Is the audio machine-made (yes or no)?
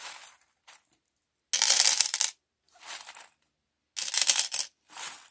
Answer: no